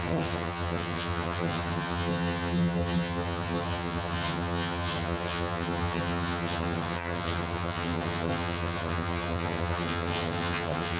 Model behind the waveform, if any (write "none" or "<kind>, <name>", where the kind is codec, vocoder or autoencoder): vocoder, HiFi-GAN